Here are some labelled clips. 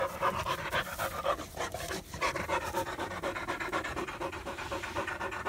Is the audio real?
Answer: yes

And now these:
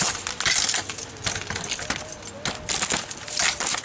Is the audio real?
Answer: yes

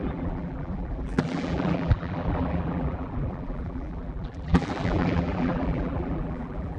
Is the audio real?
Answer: no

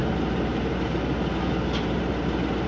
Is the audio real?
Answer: yes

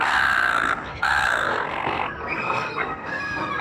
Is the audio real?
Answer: no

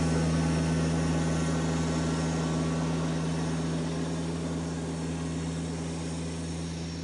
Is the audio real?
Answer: yes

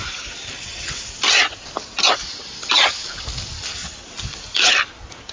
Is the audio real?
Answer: yes